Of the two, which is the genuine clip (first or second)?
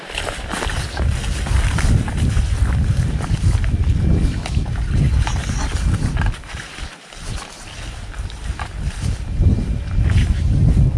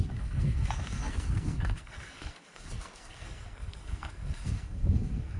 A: first